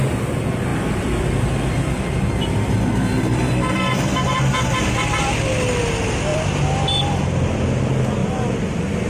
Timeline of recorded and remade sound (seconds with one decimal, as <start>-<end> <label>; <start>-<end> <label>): 0.0-0.7 recorded; 0.7-4.5 remade; 4.5-6.3 recorded; 6.3-7.8 remade; 7.8-9.1 recorded